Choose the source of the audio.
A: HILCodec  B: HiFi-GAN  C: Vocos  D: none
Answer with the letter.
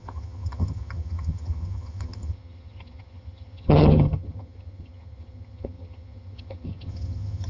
B